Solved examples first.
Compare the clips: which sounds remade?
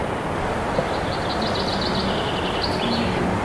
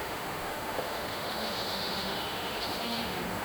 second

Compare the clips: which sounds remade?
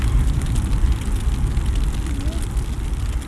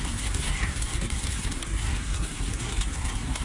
second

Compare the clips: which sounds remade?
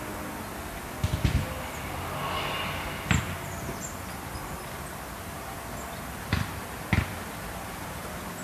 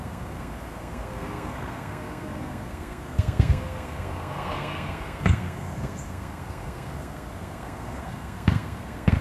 second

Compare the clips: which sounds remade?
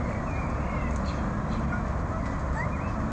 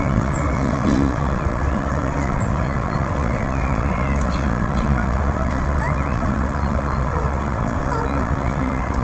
second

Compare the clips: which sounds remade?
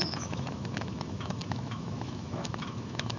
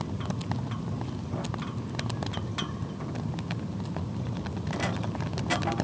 first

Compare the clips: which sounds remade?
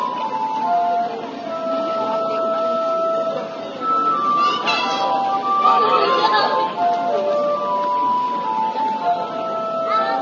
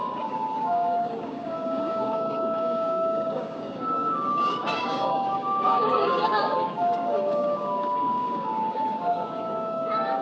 second